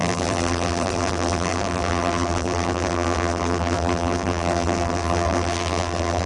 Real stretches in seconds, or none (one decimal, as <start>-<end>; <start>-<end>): none